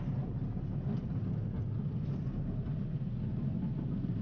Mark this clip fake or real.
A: real